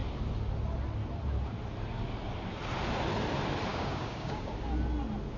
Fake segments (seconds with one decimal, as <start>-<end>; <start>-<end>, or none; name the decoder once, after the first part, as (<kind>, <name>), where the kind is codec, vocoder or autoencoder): 3.7-4.5 (codec, DAC)